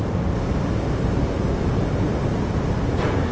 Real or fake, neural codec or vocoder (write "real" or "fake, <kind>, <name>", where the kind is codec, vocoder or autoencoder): real